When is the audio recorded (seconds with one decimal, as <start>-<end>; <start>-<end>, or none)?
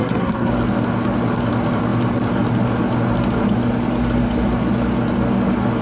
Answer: 0.5-5.8